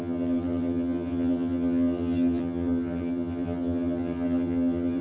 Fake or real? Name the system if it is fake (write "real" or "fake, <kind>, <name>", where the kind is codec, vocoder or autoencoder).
fake, vocoder, HiFi-GAN